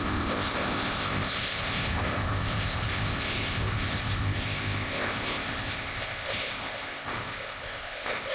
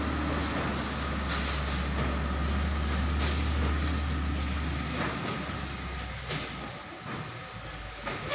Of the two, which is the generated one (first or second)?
first